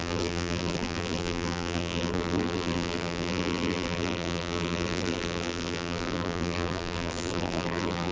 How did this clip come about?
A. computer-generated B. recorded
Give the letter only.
A